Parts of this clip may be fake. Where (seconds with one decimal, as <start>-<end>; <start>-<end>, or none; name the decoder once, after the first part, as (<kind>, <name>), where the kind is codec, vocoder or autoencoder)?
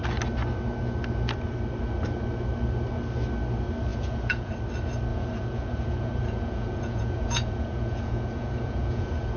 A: 3.9-4.5 (vocoder, Vocos); 5.1-9.4